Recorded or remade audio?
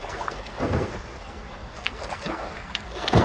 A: remade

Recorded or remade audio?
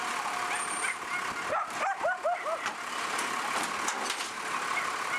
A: recorded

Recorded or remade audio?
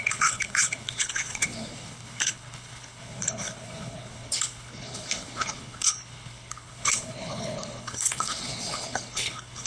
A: remade